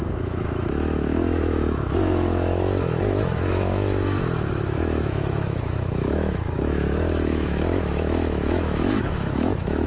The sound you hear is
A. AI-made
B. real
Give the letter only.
A